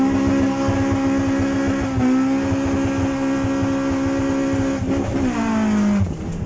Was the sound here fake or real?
real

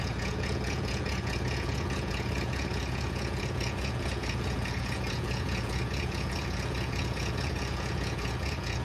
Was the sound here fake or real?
fake